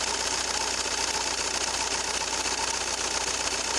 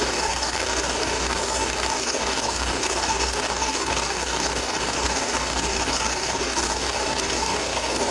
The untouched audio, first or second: first